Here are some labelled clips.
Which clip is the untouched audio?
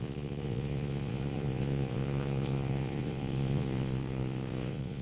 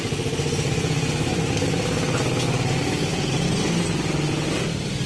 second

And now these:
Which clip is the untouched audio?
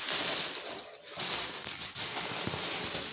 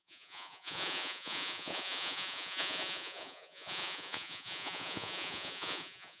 first